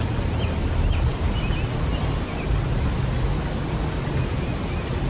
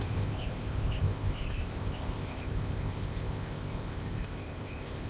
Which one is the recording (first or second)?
first